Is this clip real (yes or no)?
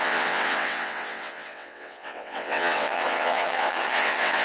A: no